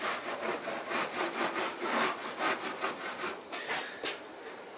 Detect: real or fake real